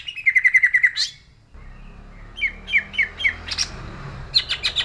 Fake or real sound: real